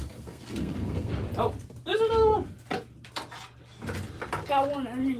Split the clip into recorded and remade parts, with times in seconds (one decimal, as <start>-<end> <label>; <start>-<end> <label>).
0.0-1.1 remade; 1.1-5.2 recorded

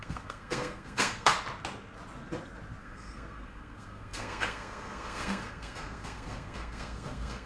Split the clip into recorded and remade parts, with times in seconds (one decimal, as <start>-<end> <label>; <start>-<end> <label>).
0.0-1.3 remade; 1.3-2.8 recorded; 2.8-7.5 remade

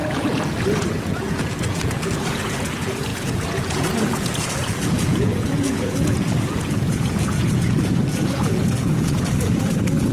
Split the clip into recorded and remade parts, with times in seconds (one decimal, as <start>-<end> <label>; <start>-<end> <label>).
0.0-10.1 remade

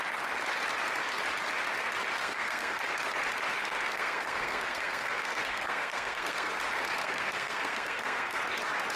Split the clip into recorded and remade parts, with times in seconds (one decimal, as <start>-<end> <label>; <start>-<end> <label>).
0.0-2.2 recorded; 2.2-2.8 remade; 2.8-3.6 recorded; 3.6-6.5 remade; 6.5-7.0 recorded; 7.0-8.4 remade; 8.4-9.0 recorded

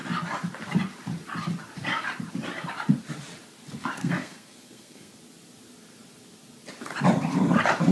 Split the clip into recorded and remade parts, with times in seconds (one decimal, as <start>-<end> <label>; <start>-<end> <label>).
0.0-4.0 recorded; 4.0-5.2 remade; 5.2-7.9 recorded

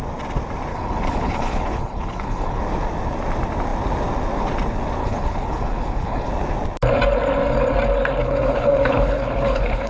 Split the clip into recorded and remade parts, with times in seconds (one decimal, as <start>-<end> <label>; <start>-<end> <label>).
0.0-0.7 recorded; 0.7-2.6 remade; 2.6-5.0 recorded; 5.0-6.3 remade; 6.3-8.2 recorded; 8.2-9.9 remade

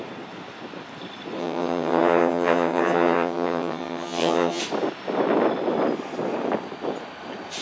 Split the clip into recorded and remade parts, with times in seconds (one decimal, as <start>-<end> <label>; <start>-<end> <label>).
0.0-1.4 recorded; 1.4-4.6 remade; 4.6-7.6 recorded

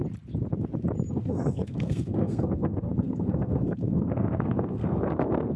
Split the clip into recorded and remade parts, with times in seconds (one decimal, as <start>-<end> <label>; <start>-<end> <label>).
0.0-1.1 recorded; 1.1-5.6 remade